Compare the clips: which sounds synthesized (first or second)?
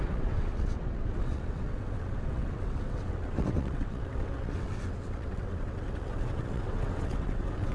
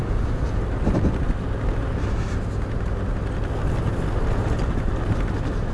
first